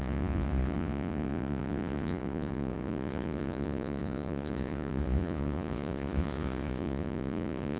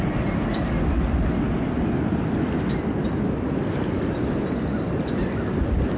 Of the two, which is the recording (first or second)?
second